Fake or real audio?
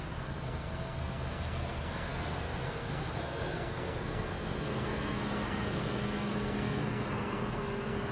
fake